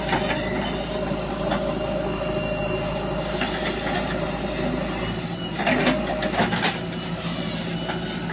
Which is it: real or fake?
real